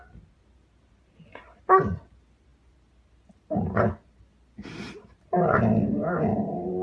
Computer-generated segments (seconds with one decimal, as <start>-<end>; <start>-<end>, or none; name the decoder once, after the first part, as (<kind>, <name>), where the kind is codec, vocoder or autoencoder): none